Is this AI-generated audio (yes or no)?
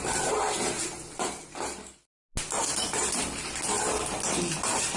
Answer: no